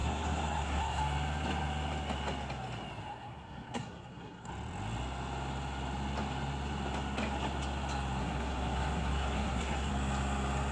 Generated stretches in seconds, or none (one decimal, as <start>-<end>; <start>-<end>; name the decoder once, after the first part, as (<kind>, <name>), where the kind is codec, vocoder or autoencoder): 0.0-1.0 (codec, SNAC); 3.1-4.5; 8.2-9.9

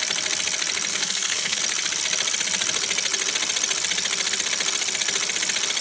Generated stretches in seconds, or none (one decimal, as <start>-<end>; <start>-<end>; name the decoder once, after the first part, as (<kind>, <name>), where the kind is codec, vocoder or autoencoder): 0.9-1.6 (codec, SNAC)

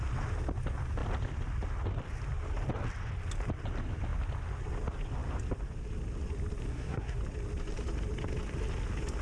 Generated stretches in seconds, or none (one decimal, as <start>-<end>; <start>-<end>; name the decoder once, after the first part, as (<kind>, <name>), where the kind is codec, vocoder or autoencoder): 6.7-7.2 (codec, SNAC)

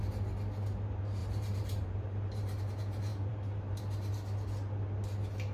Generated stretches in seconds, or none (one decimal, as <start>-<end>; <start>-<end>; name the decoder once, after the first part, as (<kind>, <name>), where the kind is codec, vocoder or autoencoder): 1.2-2.6 (vocoder, BigVGAN v2); 3.1-3.8

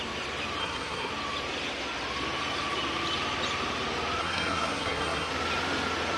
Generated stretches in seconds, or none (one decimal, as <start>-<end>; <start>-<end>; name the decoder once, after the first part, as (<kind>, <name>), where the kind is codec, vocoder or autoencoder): 0.6-1.1 (codec, SNAC); 4.2-5.3

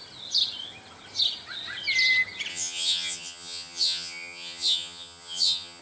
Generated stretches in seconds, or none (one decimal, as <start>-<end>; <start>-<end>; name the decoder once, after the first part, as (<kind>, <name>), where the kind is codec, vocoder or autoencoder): 2.5-5.8 (vocoder, HiFi-GAN)

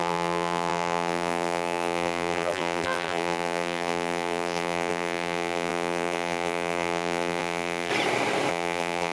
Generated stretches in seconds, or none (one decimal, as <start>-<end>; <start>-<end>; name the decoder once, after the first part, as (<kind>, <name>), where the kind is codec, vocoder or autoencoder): 0.0-7.9 (vocoder, BigVGAN v2); 8.5-9.1